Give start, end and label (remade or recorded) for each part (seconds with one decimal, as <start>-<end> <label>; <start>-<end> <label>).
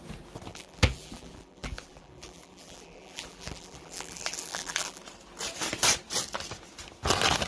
0.0-0.5 recorded; 0.5-5.0 remade; 5.0-7.5 recorded